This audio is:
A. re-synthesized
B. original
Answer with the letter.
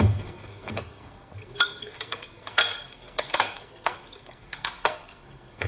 A